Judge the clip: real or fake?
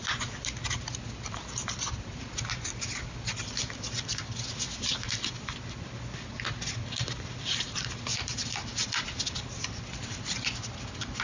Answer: real